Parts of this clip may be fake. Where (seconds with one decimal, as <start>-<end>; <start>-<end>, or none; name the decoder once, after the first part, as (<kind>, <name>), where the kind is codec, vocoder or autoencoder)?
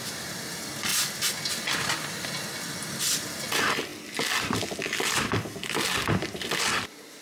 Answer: none